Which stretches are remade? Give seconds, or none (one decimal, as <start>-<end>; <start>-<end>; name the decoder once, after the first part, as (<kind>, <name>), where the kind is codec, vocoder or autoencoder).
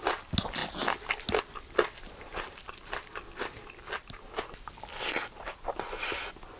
none